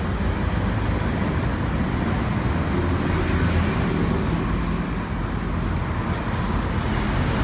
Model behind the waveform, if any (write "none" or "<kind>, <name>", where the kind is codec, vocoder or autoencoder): none